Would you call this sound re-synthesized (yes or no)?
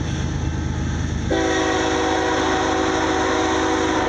no